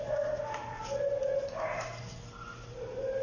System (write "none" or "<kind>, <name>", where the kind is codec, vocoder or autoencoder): none